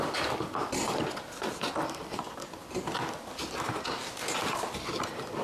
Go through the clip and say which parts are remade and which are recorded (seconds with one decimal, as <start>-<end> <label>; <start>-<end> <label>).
0.0-5.4 recorded